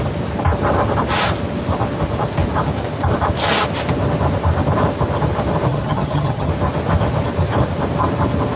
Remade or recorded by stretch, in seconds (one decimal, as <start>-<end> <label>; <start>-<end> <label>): 0.0-5.7 recorded; 5.7-6.5 remade; 6.5-8.6 recorded